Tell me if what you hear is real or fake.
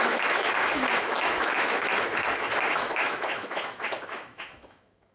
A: fake